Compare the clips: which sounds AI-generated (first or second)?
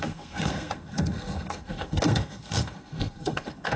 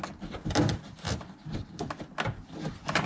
first